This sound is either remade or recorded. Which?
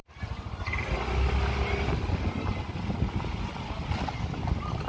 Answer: recorded